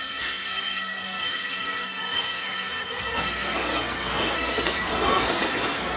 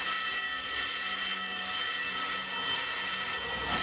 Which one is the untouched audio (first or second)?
second